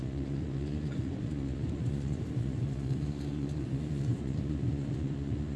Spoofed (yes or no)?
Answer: yes